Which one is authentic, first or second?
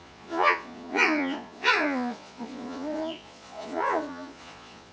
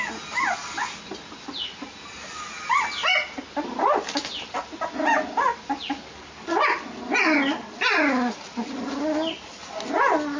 second